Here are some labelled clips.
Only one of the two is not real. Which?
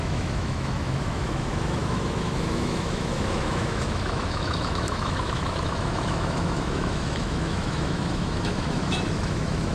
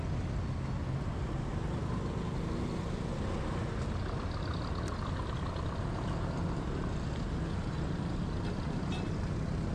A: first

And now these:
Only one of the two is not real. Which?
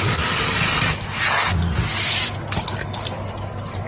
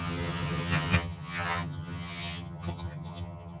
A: second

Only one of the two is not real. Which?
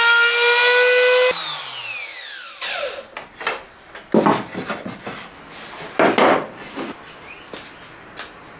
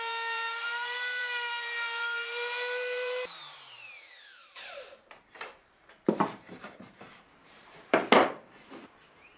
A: second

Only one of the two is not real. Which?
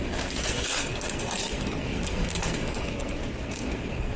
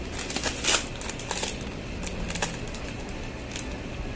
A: first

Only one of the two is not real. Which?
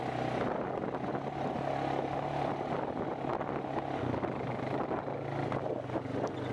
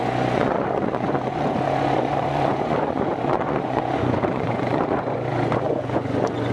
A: second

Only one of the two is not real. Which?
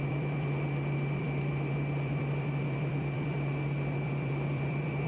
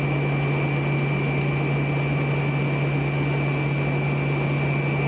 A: first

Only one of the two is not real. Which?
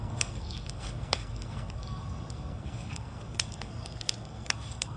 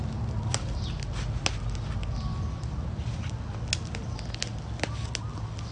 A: first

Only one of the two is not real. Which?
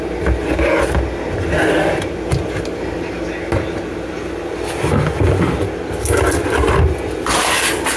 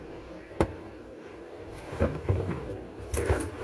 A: second